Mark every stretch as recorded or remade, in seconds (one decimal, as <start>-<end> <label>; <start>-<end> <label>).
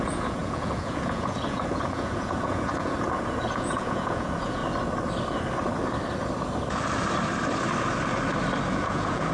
0.0-4.6 remade; 4.6-8.7 recorded; 8.7-9.3 remade